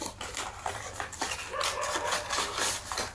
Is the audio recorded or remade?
recorded